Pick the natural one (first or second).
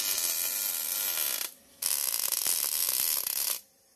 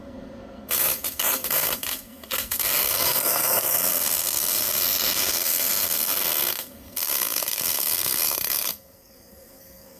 first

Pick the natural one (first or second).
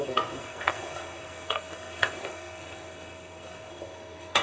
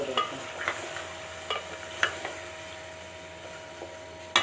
second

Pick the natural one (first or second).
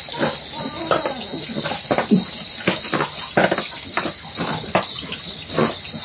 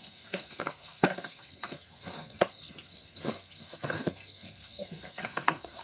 first